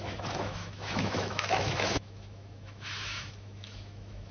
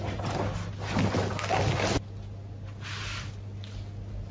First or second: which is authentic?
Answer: second